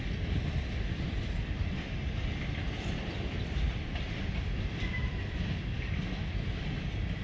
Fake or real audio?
fake